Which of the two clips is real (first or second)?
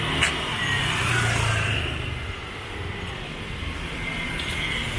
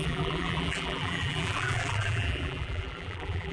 first